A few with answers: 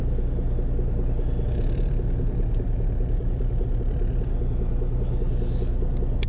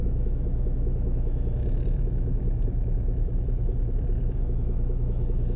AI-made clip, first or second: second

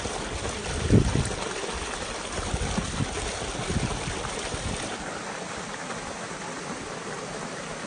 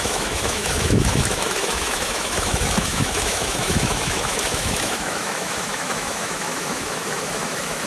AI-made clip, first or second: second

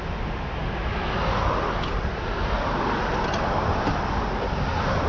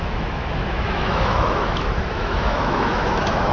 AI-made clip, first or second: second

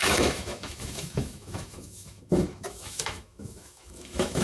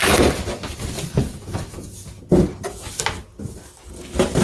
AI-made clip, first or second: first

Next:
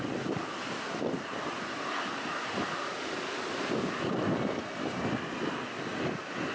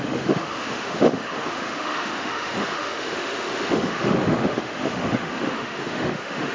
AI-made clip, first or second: second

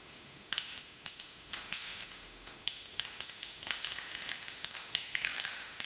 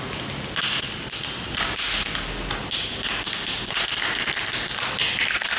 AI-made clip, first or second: first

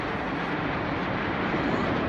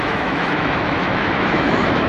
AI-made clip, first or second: second